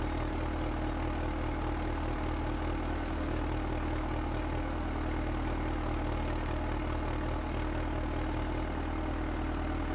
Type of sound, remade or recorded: recorded